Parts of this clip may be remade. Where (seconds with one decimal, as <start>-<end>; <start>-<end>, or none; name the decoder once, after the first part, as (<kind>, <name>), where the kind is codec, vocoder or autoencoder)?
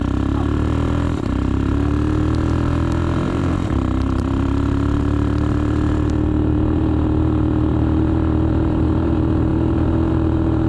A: 0.0-10.7 (vocoder, BigVGAN v2)